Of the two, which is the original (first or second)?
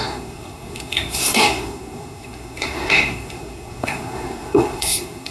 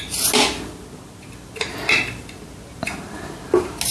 second